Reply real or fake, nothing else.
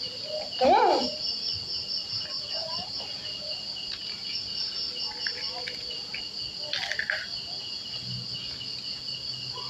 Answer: real